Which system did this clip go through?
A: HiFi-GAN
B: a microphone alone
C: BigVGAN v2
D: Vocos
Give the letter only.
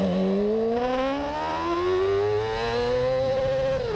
B